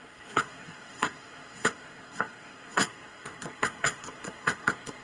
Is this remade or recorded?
remade